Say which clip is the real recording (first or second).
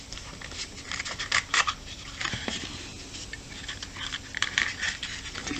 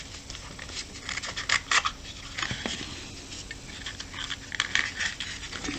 second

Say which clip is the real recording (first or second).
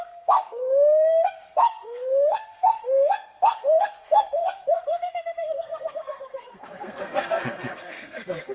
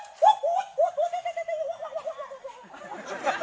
second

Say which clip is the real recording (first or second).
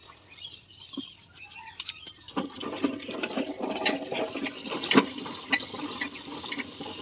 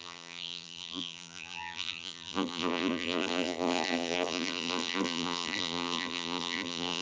first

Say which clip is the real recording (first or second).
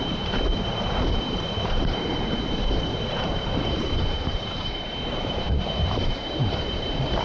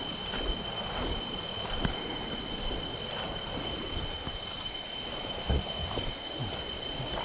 second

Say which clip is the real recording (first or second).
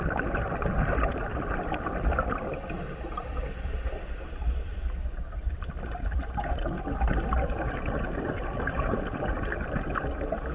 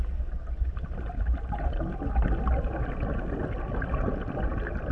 second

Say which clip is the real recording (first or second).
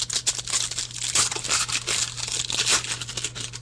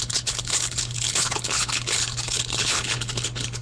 first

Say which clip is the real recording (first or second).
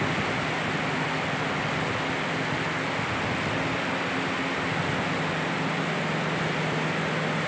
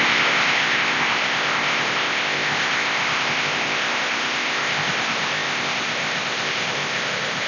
first